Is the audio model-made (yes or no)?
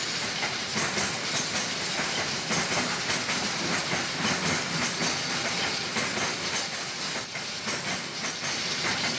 no